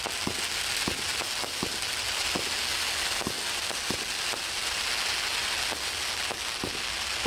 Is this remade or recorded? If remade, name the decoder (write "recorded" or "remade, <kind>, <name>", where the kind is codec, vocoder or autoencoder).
recorded